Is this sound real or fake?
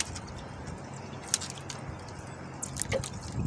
real